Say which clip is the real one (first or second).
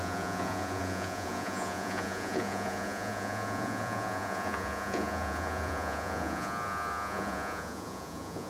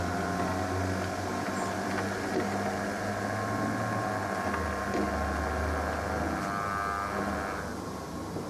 second